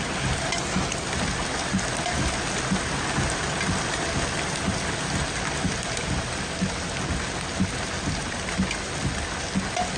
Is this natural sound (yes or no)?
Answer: yes